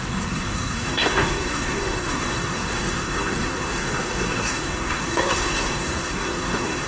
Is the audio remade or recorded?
remade